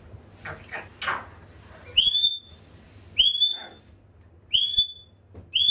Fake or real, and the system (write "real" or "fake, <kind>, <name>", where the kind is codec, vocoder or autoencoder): real